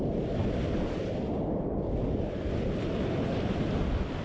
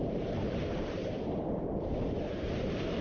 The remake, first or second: second